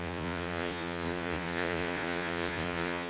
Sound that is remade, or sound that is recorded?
remade